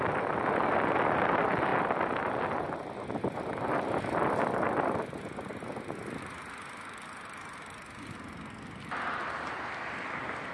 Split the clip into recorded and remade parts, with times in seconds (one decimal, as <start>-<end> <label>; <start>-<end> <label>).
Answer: 0.0-10.5 recorded